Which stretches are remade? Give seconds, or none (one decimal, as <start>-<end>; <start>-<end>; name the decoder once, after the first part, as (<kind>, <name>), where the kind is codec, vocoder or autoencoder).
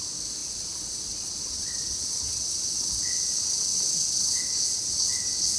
0.4-3.0 (vocoder, Vocos)